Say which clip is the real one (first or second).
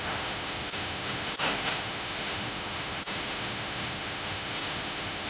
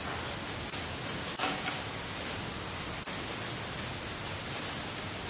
second